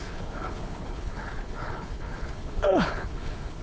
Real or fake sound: fake